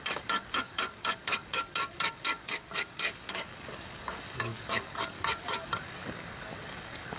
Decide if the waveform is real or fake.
fake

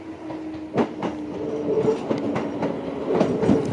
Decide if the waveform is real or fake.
real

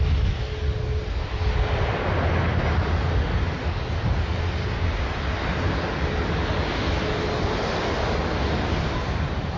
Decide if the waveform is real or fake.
real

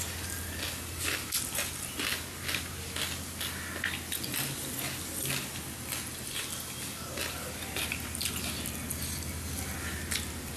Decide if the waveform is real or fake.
real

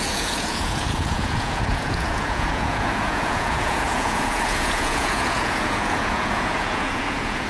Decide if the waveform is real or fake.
fake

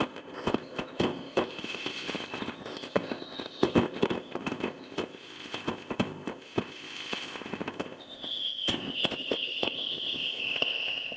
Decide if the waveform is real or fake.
fake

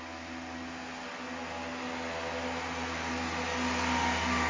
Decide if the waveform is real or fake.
real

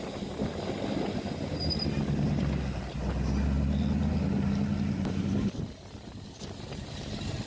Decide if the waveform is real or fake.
real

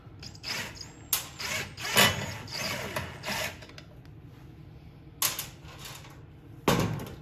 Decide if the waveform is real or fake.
real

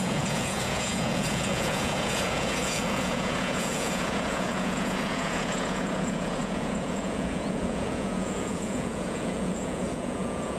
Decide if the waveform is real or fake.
fake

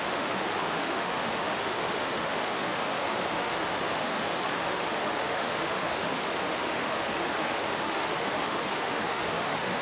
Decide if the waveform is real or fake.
fake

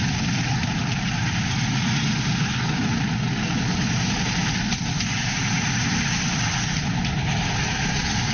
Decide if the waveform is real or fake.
real